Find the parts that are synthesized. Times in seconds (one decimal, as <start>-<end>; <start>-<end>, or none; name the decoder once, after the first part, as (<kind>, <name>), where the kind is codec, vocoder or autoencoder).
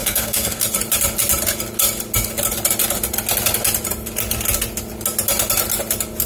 0.0-0.6 (codec, SNAC)